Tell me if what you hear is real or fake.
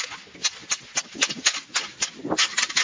real